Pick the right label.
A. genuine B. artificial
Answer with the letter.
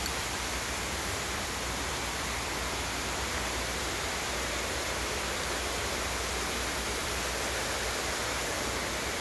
B